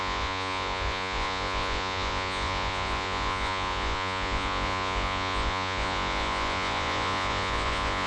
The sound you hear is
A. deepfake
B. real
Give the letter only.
A